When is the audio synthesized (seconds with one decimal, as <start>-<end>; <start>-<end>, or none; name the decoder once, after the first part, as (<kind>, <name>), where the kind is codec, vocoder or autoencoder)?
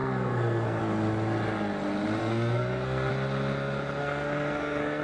0.0-0.8 (codec, SNAC); 2.2-3.1; 4.0-5.0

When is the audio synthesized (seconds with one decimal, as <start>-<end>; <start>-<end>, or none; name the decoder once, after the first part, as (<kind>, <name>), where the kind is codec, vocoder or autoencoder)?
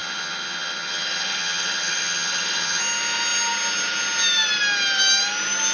0.0-2.8 (vocoder, HiFi-GAN)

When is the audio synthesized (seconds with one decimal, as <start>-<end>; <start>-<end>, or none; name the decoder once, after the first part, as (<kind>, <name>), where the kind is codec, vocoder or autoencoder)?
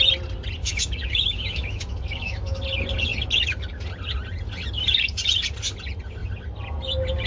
0.6-2.6 (autoencoder, DAC-VAE)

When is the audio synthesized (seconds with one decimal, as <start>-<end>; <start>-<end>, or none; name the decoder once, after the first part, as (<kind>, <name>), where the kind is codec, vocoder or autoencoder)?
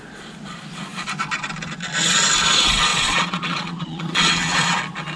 2.9-4.8 (vocoder, Vocos)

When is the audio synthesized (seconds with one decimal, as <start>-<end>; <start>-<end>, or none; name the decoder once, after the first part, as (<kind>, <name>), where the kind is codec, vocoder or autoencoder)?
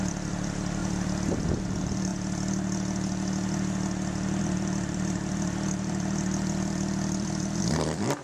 0.0-2.1 (vocoder, BigVGAN v2); 4.4-8.2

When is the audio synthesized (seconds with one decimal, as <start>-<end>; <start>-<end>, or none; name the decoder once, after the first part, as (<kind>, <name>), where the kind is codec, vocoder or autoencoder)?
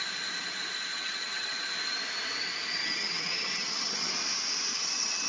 0.9-1.7 (vocoder, HiFi-GAN); 2.8-4.1; 4.7-5.3